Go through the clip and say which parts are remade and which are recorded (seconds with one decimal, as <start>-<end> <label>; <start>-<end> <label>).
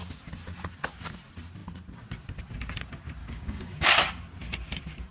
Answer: 0.0-3.2 recorded; 3.2-3.9 remade; 3.9-5.1 recorded